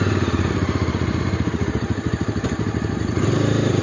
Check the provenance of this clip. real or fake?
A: fake